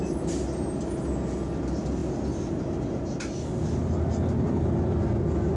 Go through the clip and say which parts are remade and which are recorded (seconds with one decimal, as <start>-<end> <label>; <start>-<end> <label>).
0.0-5.6 recorded